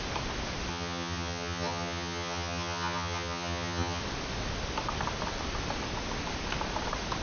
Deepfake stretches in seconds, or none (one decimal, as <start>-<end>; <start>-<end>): 0.7-4.0

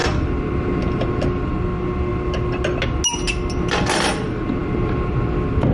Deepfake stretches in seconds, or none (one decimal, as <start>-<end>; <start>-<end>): none